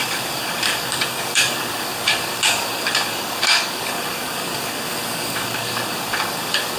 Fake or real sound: fake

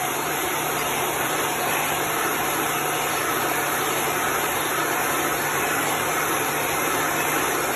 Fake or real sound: fake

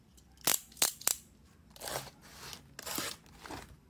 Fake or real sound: real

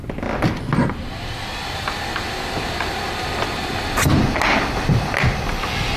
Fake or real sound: real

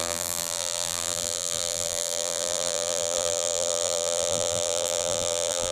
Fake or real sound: fake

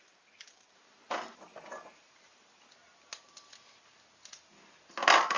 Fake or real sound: real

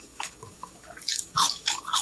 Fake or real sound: fake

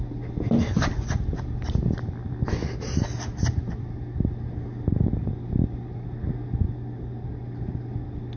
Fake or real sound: real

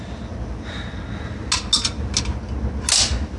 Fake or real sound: real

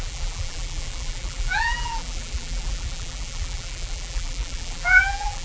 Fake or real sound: fake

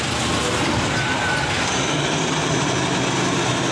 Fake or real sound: real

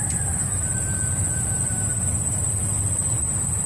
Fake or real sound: fake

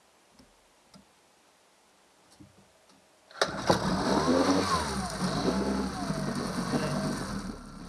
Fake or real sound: real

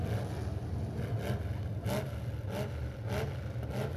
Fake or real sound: real